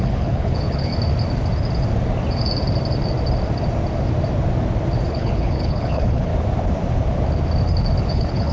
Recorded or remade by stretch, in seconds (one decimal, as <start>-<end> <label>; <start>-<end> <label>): 0.0-0.9 remade; 0.9-5.1 recorded; 5.1-6.3 remade; 6.3-8.0 recorded; 8.0-8.5 remade